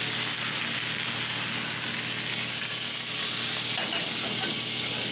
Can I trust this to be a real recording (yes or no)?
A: yes